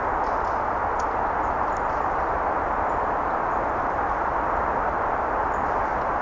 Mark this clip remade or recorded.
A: recorded